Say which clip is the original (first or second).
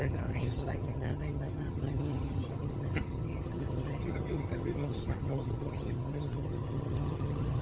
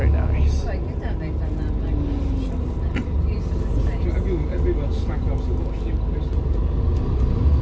second